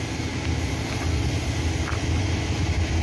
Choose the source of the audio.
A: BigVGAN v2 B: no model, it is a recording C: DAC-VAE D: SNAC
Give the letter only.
B